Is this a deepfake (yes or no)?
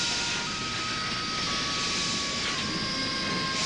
no